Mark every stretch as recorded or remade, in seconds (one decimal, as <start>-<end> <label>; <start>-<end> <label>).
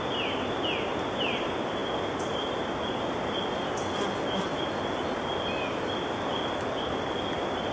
0.0-7.7 recorded